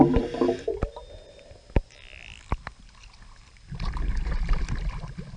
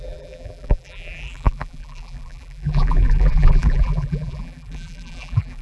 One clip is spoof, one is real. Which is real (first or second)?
first